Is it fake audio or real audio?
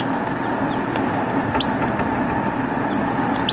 real